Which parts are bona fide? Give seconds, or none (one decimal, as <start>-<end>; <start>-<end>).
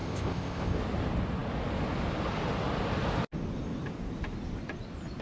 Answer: 0.8-5.2